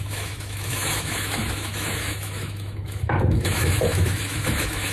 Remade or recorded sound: remade